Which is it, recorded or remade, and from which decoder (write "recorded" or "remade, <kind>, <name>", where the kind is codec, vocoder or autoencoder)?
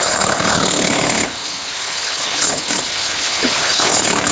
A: remade, codec, HILCodec